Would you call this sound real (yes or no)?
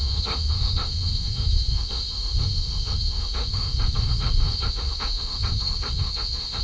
no